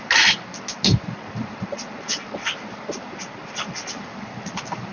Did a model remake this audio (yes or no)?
no